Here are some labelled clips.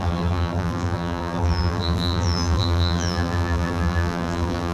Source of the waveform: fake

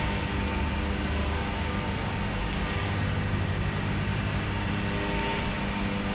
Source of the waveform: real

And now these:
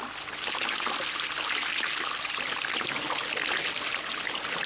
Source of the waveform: real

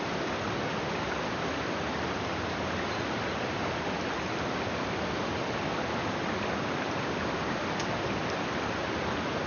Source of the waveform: real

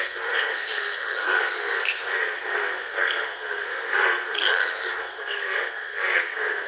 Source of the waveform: fake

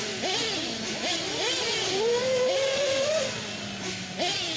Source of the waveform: real